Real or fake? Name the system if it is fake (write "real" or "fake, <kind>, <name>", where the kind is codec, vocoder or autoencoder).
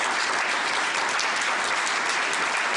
real